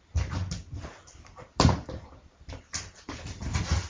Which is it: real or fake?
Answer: real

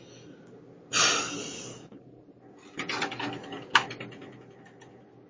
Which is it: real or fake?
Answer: real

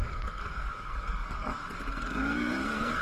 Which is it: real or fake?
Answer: fake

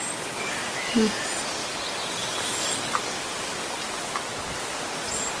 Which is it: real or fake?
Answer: real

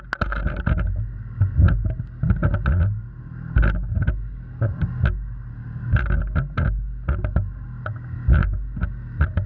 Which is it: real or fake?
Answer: real